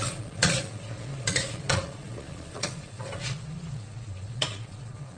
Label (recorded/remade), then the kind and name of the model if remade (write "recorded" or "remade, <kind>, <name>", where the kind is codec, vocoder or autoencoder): remade, vocoder, Vocos